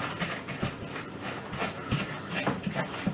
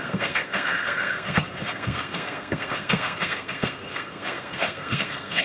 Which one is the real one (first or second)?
first